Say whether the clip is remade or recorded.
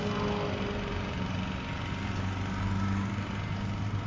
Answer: recorded